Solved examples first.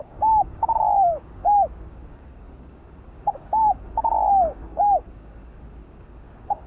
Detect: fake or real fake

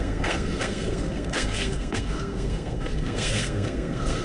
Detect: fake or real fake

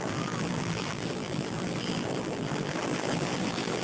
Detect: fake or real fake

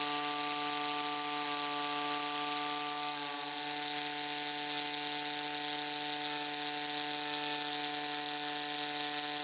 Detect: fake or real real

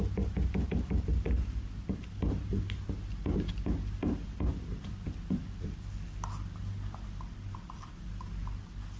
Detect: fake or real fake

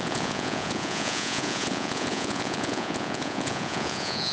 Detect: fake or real fake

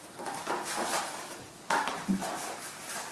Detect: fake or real real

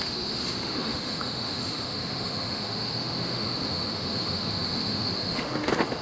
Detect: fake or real fake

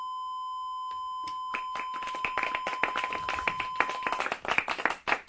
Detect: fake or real real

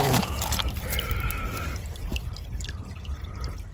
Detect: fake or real real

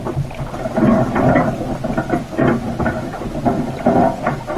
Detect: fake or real real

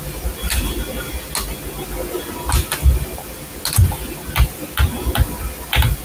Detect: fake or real real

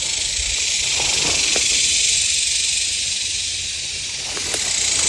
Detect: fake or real real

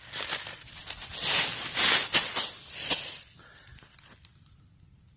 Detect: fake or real real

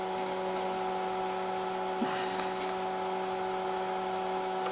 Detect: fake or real real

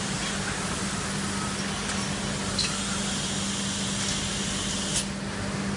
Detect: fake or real real